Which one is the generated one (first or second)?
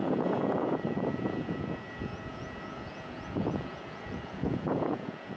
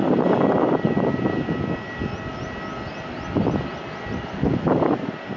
first